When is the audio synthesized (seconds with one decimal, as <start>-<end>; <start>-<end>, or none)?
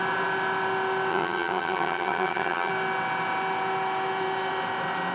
1.1-2.7